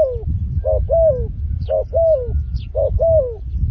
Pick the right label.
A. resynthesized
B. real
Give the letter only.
B